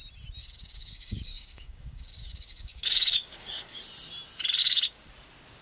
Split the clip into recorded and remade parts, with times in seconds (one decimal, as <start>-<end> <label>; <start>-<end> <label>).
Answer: 0.0-0.4 recorded; 0.4-3.8 remade; 3.8-4.6 recorded; 4.6-5.1 remade; 5.1-5.6 recorded